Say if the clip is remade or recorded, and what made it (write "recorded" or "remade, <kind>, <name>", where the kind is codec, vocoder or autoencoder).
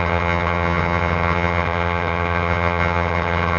remade, vocoder, HiFi-GAN